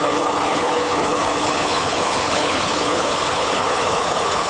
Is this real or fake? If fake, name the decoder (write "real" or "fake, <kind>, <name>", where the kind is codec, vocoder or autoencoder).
fake, codec, HILCodec